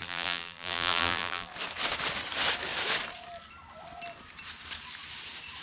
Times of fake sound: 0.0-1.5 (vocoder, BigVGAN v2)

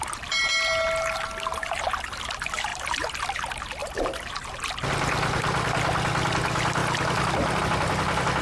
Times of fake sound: none

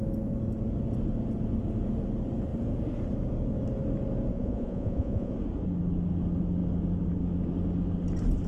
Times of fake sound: 4.3-5.3 (vocoder, Vocos)